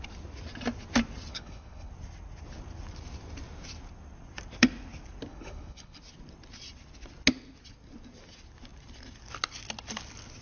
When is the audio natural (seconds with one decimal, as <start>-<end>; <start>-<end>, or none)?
0.0-1.3; 1.9-5.3; 6.0-10.4